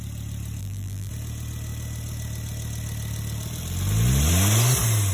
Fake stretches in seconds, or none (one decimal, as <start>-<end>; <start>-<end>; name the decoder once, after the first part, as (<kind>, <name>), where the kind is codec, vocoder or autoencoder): 0.6-1.1 (vocoder, BigVGAN v2)